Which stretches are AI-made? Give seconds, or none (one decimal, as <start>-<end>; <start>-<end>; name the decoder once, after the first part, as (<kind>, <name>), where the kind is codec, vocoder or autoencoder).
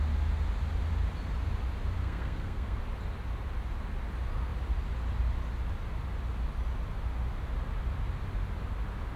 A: 2.0-2.8 (codec, SNAC)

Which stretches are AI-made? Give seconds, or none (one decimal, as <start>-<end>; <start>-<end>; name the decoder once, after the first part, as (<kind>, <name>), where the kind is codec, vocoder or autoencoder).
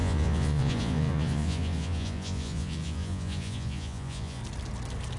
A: 0.0-4.4 (vocoder, Vocos)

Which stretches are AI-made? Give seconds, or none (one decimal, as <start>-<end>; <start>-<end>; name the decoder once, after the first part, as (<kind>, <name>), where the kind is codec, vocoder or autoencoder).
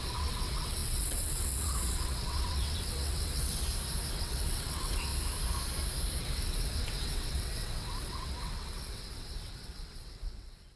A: 0.0-3.6 (vocoder, WaveNeXt); 4.1-5.1; 6.2-10.8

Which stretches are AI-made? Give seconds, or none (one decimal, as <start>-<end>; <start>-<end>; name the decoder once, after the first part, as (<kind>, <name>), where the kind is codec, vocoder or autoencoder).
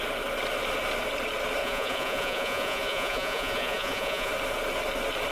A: 1.6-4.3 (vocoder, Vocos)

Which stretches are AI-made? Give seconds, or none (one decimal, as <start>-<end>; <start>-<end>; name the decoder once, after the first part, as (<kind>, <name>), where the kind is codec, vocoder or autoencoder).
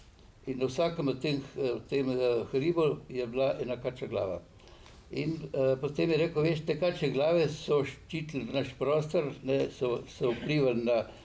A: none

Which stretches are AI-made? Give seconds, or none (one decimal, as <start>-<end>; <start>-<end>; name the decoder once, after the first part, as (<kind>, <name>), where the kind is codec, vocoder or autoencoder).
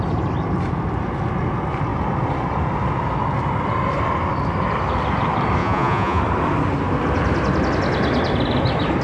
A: 5.6-6.2 (vocoder, Vocos)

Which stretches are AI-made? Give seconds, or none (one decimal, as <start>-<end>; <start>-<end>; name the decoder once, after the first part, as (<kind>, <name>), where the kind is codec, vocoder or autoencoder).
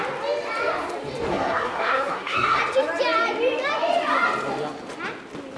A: 1.3-2.6 (codec, SNAC)